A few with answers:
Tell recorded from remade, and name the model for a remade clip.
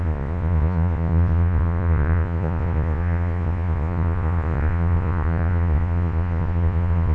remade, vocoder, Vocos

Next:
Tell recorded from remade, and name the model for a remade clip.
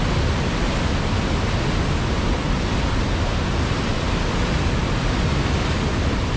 recorded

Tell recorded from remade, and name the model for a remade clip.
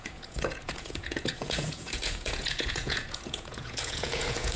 remade, vocoder, Vocos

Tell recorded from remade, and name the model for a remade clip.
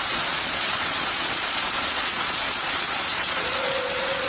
remade, vocoder, Vocos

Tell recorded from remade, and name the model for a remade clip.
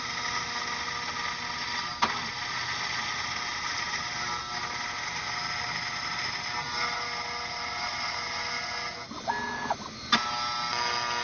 recorded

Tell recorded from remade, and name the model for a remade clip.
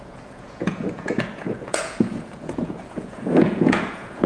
remade, vocoder, Vocos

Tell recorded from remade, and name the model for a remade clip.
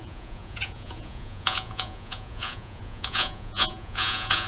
remade, vocoder, Vocos